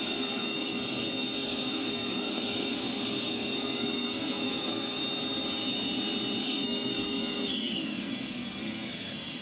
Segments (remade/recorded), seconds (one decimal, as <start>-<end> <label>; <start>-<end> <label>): 0.0-5.0 remade; 5.0-6.4 recorded; 6.4-9.4 remade